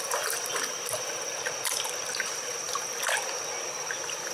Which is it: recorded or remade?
recorded